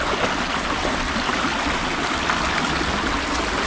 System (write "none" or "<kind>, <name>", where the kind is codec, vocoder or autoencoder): none